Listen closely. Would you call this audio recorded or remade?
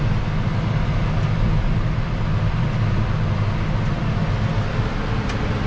recorded